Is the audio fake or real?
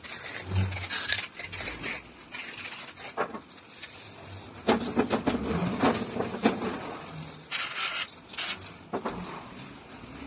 real